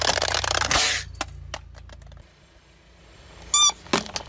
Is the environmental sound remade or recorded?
recorded